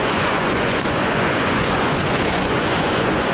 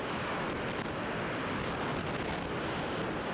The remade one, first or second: first